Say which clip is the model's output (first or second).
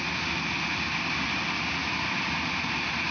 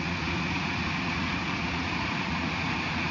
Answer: second